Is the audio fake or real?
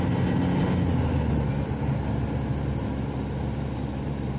real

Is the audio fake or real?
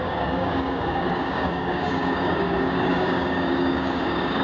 fake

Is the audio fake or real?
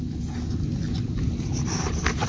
real